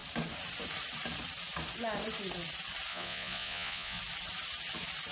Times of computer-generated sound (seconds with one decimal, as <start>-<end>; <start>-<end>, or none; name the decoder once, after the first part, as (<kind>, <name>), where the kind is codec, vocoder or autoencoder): 2.9-4.0 (vocoder, Vocos)